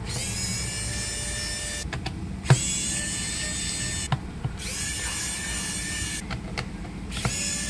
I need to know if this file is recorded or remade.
recorded